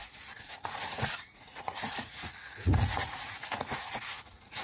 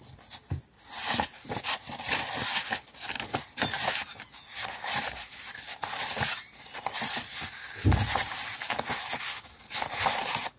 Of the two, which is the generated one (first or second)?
first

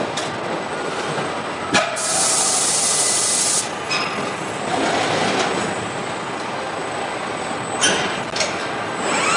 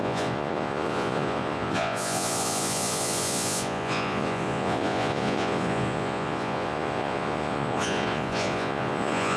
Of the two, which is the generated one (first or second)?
second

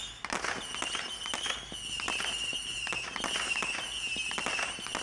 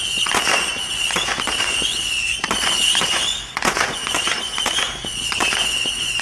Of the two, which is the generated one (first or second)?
second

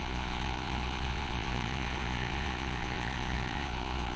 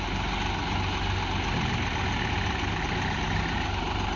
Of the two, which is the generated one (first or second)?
first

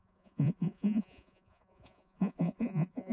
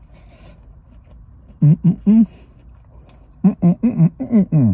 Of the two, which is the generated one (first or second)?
first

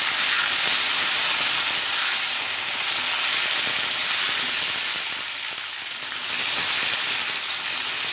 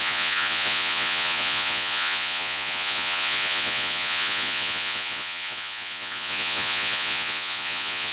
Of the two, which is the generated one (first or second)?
second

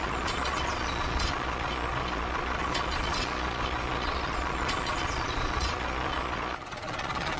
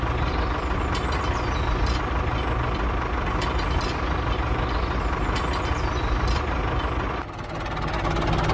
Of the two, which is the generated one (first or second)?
first